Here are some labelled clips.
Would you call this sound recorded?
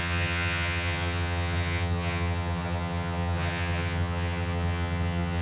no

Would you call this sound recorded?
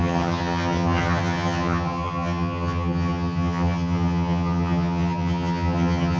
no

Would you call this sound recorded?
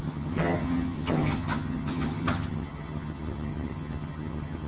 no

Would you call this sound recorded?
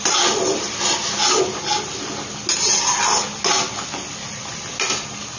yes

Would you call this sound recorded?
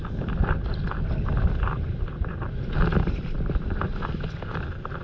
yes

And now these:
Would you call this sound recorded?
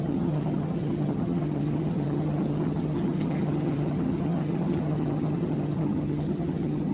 no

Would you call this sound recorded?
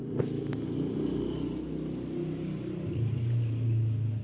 yes